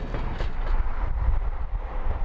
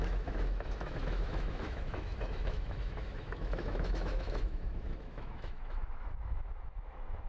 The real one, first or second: first